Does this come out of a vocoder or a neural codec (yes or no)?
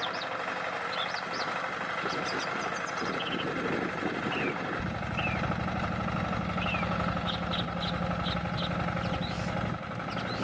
no